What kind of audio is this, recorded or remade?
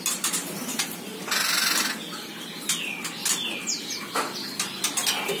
recorded